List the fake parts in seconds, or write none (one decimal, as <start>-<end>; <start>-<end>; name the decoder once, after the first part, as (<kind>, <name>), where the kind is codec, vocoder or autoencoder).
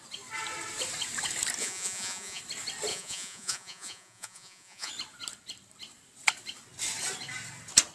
1.6-2.4 (vocoder, Vocos); 2.9-4.9